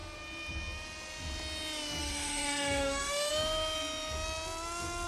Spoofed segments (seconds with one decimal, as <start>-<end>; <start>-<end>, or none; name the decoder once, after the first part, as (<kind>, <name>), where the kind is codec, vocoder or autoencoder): 2.0-3.3 (autoencoder, DAC-VAE)